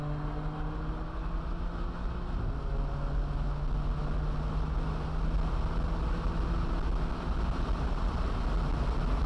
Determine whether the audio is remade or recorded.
recorded